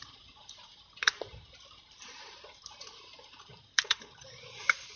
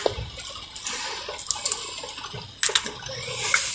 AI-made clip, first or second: first